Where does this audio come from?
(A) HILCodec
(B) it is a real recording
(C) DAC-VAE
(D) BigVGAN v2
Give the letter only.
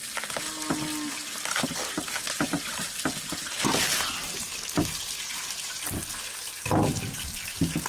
B